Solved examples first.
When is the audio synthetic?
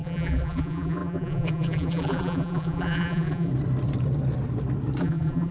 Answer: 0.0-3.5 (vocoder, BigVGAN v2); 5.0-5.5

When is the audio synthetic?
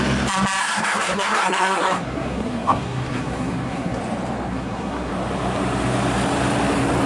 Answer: 0.6-4.0 (codec, SNAC); 4.5-5.1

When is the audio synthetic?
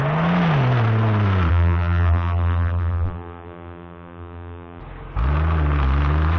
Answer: 1.5-4.8 (vocoder, BigVGAN v2)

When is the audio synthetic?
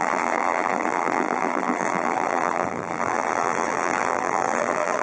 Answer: 0.0-5.0 (vocoder, BigVGAN v2)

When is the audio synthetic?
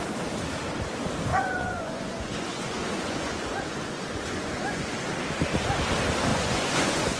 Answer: 1.3-5.1 (vocoder, Vocos); 6.3-7.2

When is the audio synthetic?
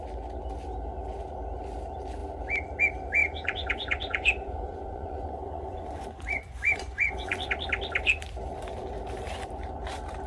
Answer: 3.2-7.5 (vocoder, Vocos)